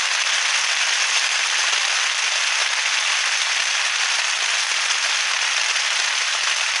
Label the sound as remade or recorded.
recorded